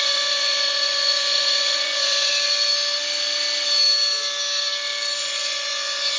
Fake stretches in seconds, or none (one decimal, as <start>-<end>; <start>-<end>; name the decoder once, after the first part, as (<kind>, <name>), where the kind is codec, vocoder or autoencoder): 0.0-2.3 (vocoder, Vocos); 5.2-6.2